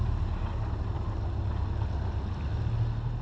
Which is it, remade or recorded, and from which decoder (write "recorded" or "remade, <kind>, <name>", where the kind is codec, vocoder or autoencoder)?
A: recorded